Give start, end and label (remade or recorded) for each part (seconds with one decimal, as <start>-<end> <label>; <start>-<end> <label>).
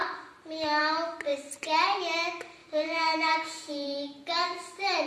0.0-2.6 recorded; 2.6-5.1 remade